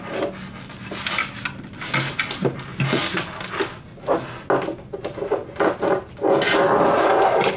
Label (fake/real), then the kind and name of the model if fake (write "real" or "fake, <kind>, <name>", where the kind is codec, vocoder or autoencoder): real